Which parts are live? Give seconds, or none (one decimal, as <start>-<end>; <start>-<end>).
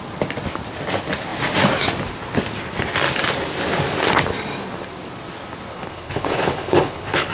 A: 0.0-5.7